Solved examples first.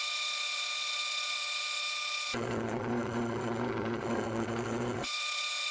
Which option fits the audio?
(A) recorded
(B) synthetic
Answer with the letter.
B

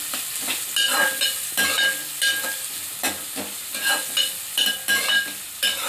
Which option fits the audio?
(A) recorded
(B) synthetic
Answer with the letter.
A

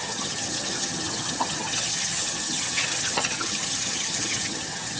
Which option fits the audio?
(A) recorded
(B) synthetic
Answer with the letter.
B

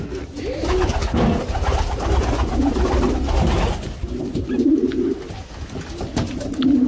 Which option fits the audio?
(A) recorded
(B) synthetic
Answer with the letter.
A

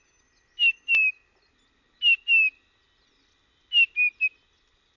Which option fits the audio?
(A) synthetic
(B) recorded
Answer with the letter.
B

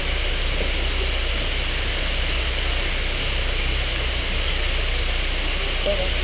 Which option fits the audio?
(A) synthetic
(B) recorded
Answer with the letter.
B